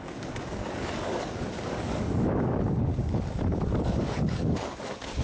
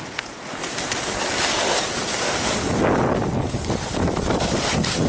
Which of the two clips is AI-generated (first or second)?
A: first